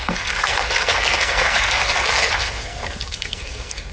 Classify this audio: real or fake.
fake